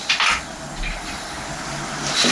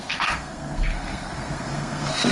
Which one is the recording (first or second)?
first